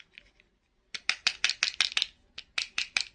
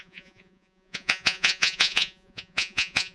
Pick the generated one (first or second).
second